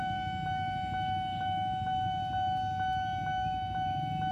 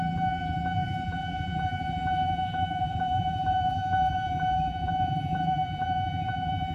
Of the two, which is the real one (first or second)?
first